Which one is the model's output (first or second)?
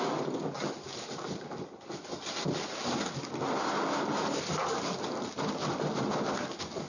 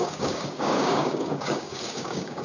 second